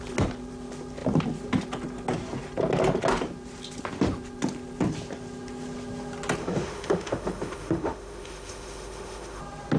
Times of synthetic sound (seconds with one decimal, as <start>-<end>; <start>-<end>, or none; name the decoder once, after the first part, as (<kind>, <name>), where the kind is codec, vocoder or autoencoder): 6.4-9.4 (autoencoder, DAC-VAE)